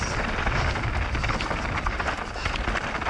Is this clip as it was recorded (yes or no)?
yes